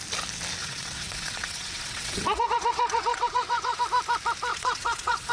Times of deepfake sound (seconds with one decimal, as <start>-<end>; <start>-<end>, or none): 0.6-3.8; 4.5-5.3